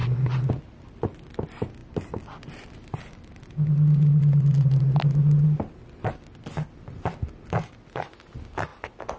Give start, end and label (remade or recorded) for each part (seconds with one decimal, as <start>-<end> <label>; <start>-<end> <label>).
0.0-0.5 remade; 0.5-1.8 recorded; 1.8-2.5 remade; 2.5-9.2 recorded